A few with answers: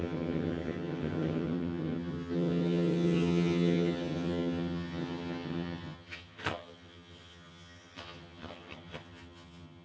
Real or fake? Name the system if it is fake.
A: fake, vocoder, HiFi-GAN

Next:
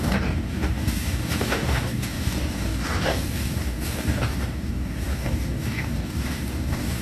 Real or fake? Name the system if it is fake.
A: fake, codec, DAC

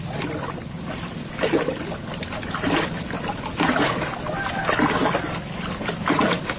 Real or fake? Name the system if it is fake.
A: real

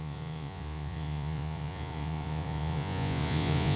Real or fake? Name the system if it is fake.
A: fake, vocoder, Vocos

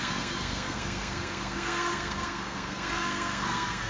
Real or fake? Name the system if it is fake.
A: fake, codec, SNAC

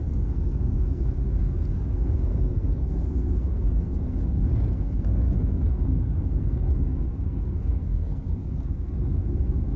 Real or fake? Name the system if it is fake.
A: fake, codec, SNAC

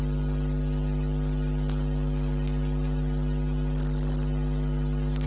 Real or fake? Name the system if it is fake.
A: real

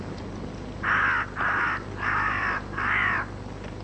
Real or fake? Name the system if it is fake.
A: real